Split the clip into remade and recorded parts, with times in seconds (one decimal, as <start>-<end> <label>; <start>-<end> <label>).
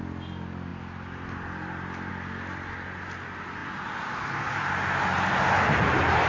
0.0-6.3 recorded